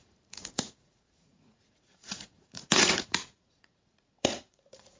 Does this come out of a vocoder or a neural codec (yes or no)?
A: yes